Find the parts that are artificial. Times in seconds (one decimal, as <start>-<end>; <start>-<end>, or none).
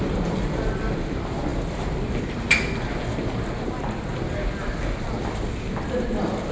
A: none